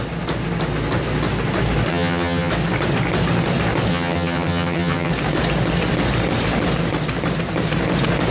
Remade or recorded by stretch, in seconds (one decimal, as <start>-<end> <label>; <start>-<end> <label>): 0.0-1.9 recorded; 1.9-2.5 remade; 2.5-3.9 recorded; 3.9-5.1 remade; 5.1-8.3 recorded